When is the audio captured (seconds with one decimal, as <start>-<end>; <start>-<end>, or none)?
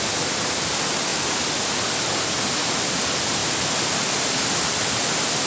0.0-5.5